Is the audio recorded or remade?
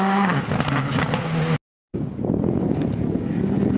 recorded